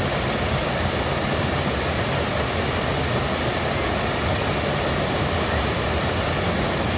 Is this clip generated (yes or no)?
no